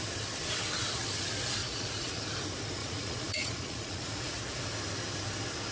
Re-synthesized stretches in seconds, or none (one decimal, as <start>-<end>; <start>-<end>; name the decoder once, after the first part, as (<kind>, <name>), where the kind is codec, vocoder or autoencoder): 1.6-2.2 (vocoder, Vocos); 2.8-4.4